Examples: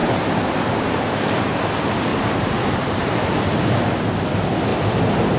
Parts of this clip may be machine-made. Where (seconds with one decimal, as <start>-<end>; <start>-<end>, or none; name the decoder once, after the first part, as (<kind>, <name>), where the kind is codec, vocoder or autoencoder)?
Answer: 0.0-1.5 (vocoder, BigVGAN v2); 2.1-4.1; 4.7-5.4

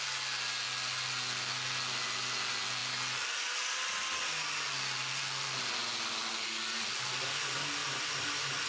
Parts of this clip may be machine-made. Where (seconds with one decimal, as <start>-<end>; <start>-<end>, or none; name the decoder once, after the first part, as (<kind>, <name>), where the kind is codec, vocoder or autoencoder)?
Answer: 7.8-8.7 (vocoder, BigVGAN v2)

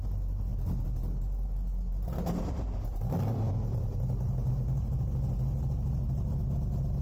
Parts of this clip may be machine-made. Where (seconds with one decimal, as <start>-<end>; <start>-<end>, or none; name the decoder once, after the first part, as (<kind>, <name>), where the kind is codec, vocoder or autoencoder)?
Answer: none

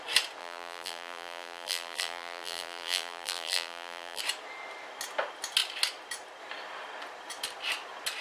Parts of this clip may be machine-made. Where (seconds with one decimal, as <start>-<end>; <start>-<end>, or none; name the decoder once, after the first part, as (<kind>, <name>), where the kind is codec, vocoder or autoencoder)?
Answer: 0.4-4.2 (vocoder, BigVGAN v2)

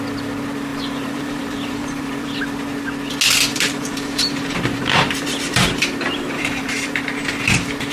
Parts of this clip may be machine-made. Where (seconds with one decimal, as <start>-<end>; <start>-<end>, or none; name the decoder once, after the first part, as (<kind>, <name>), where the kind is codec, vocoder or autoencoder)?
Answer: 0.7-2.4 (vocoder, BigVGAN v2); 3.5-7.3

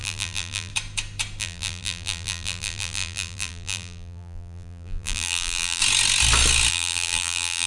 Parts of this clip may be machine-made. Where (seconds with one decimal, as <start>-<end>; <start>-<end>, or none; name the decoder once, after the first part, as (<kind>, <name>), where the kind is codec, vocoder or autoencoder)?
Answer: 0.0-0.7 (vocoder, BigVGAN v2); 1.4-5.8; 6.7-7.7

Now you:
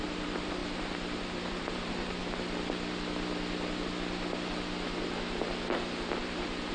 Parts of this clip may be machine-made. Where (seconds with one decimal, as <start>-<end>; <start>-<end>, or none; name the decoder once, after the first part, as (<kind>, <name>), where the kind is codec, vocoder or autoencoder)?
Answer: 0.0-2.2 (vocoder, BigVGAN v2); 6.2-6.7

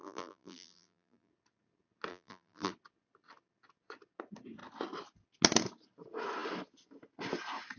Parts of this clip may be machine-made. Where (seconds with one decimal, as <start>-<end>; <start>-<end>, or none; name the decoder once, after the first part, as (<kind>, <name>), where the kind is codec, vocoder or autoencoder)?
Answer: 0.0-1.3 (vocoder, BigVGAN v2); 2.1-2.7